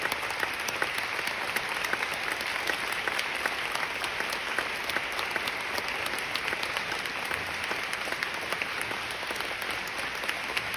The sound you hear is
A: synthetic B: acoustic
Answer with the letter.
B